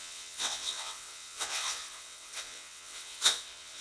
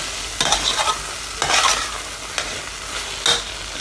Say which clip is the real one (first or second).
second